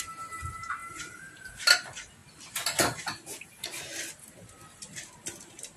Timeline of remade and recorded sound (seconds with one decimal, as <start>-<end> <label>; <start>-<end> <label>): 0.0-0.8 recorded; 0.8-1.5 remade; 1.5-5.8 recorded